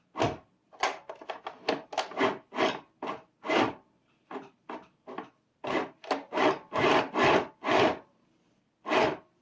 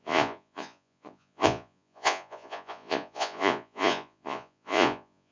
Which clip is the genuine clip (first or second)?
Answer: first